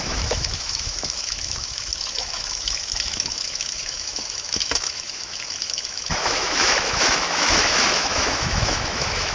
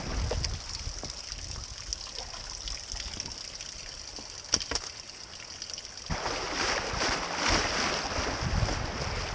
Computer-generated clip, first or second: first